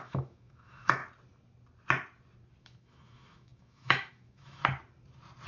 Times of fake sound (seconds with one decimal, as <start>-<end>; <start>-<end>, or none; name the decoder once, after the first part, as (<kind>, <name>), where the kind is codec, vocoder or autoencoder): 0.0-1.0 (autoencoder, DAC-VAE); 2.6-4.6